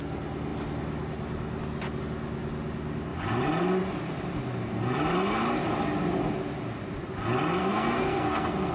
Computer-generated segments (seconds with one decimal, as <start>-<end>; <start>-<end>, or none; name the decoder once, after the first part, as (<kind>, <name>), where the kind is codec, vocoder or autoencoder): 7.6-8.7 (codec, SNAC)